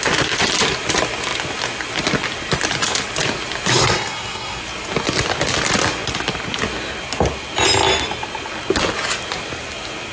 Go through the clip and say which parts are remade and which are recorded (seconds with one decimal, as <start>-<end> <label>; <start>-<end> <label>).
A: 0.0-3.7 recorded; 3.7-4.6 remade; 4.6-10.1 recorded